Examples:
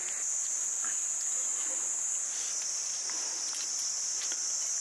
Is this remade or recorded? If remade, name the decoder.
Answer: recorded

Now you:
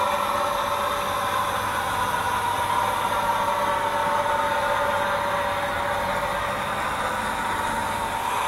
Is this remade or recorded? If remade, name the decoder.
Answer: recorded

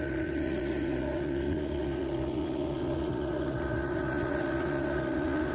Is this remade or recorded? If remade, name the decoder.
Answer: remade, vocoder, Vocos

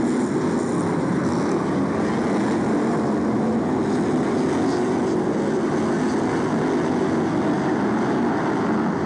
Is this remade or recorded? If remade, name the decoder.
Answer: recorded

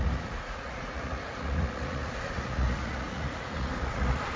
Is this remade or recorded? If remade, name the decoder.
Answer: remade, vocoder, Vocos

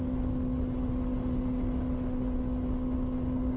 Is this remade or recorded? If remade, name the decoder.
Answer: recorded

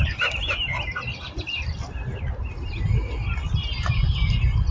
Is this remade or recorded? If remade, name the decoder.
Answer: recorded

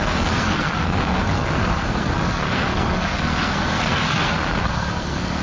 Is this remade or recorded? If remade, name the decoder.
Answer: remade, codec, SNAC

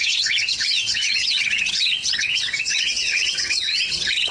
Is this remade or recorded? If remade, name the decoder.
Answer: remade, vocoder, WaveNeXt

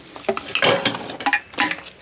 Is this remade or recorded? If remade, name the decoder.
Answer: recorded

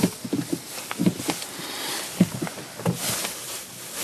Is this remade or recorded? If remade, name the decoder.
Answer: recorded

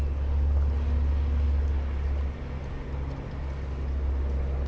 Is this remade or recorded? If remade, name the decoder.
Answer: recorded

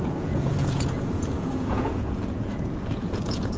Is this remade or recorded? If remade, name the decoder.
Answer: remade, vocoder, Vocos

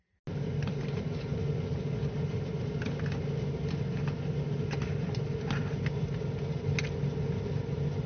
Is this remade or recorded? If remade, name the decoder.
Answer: recorded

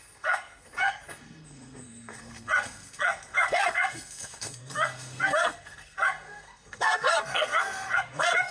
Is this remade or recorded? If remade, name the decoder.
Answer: remade, codec, SNAC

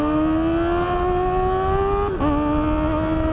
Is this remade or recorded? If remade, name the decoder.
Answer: recorded